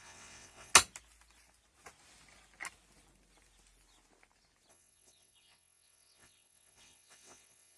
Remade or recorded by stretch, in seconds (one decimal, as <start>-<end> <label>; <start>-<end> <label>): 0.0-0.7 remade; 0.7-4.7 recorded; 4.7-7.8 remade